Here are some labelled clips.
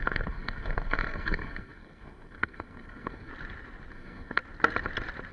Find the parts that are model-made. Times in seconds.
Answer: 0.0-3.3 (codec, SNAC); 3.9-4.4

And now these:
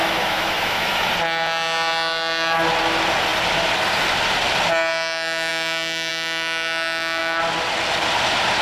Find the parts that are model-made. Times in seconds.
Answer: 0.0-1.1 (autoencoder, DAC-VAE)